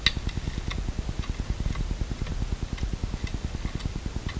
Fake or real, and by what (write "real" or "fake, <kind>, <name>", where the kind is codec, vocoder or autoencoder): real